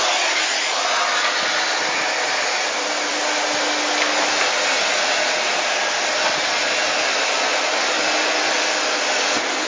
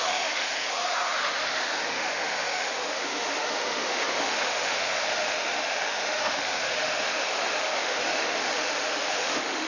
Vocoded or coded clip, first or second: second